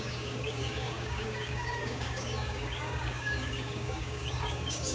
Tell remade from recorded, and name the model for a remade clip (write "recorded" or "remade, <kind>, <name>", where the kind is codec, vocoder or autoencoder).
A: remade, codec, DAC